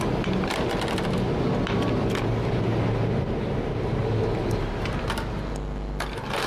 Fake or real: real